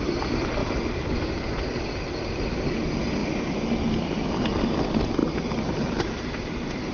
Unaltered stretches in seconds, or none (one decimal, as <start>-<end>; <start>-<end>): 0.0-3.2; 4.3-6.9